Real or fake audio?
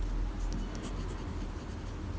real